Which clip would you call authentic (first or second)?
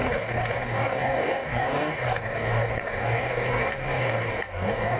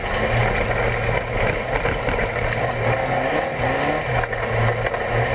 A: second